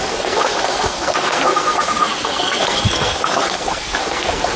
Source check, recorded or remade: remade